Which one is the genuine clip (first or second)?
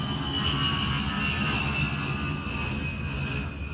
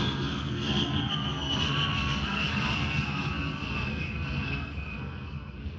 first